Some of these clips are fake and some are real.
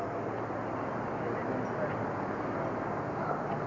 real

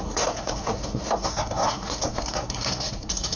fake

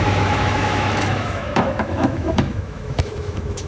fake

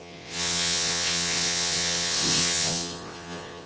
fake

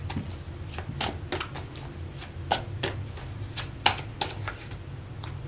real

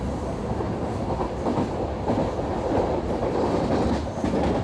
real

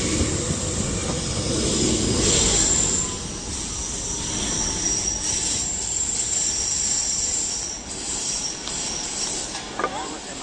real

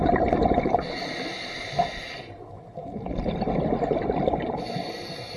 real